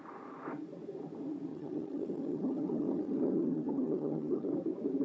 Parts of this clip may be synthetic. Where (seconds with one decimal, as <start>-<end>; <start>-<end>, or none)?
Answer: 1.5-4.5